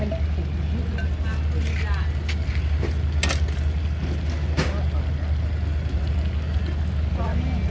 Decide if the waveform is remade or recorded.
recorded